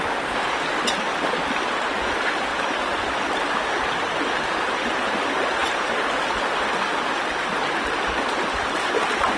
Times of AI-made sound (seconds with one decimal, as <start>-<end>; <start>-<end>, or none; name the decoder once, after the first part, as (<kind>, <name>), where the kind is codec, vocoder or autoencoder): none